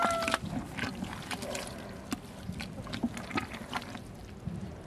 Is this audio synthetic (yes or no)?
no